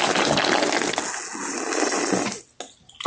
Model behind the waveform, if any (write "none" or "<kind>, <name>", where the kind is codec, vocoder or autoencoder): none